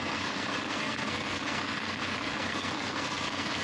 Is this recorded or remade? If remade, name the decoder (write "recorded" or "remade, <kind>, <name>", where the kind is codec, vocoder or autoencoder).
remade, codec, SNAC